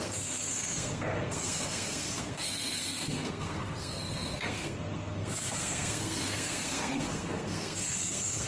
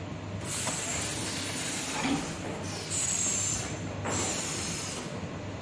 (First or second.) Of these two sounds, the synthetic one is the first